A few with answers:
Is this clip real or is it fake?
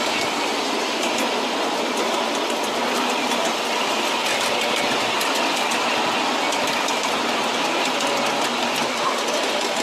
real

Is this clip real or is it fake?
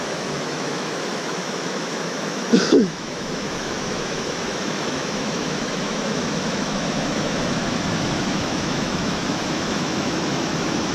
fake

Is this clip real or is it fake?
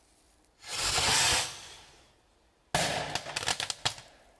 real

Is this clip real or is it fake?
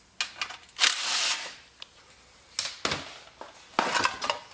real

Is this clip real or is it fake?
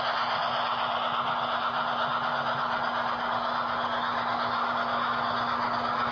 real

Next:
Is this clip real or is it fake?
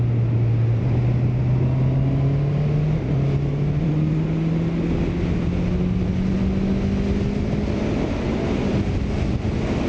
real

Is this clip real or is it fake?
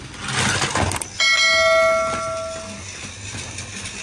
real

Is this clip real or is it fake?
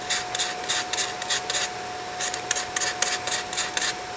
real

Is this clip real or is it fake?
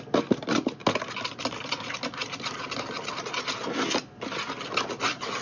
real